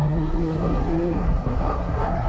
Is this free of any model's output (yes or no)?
no